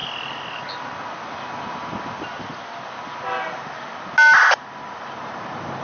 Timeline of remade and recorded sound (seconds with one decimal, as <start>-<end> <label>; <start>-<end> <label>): 0.0-3.5 recorded; 3.5-3.9 remade; 3.9-4.4 recorded; 4.4-5.8 remade